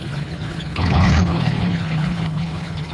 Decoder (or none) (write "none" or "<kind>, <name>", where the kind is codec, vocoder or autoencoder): codec, HILCodec